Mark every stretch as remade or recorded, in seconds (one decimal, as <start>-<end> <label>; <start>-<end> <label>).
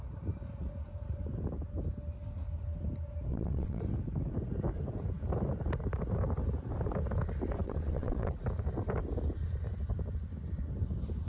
0.0-3.3 recorded; 3.3-3.8 remade; 3.8-7.6 recorded; 7.6-8.3 remade; 8.3-11.3 recorded